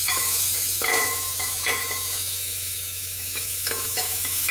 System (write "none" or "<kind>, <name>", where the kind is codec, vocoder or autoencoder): autoencoder, DAC-VAE